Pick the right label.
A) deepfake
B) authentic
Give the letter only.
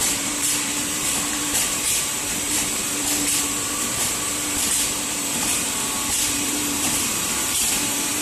A